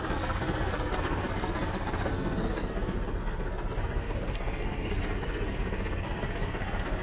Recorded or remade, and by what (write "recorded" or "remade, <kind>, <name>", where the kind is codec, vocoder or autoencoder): remade, codec, SNAC